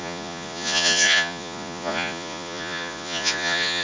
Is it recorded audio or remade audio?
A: remade